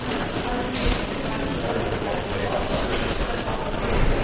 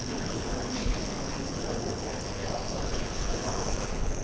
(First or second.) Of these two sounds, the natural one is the first